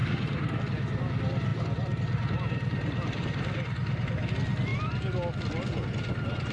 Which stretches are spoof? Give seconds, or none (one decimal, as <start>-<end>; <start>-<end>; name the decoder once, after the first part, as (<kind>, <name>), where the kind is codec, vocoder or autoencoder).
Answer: 0.0-0.6 (vocoder, BigVGAN v2); 1.5-4.3